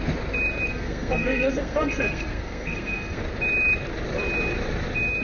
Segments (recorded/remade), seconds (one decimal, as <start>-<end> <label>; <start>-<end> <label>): 0.0-0.7 recorded; 0.7-3.2 remade; 3.2-5.2 recorded